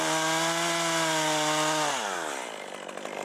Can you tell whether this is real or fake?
real